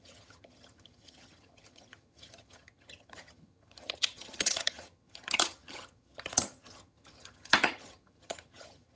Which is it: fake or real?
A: fake